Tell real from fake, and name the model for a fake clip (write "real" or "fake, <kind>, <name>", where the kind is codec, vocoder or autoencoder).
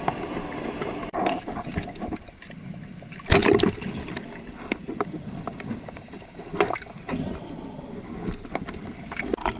real